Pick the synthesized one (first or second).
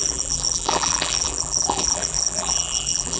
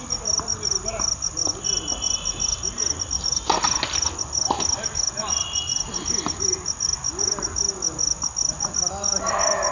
first